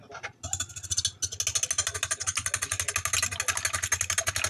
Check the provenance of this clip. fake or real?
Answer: real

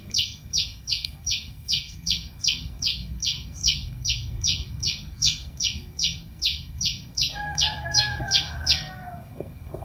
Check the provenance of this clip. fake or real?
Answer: fake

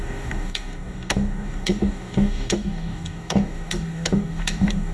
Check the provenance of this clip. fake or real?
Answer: fake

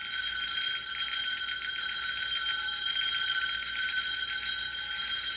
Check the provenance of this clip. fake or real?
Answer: real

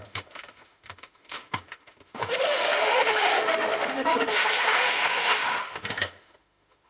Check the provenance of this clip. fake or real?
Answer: fake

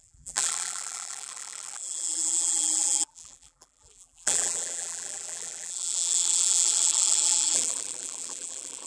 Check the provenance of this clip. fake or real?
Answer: fake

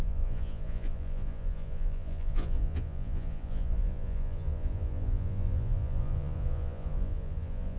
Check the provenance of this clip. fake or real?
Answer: fake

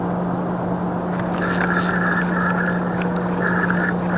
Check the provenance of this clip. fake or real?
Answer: real